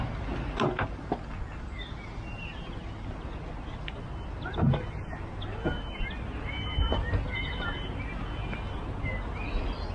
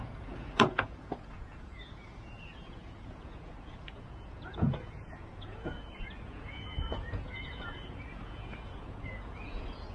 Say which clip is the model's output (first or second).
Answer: second